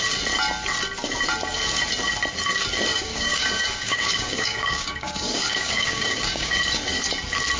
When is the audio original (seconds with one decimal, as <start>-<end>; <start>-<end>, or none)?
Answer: 0.0-2.9; 6.6-7.6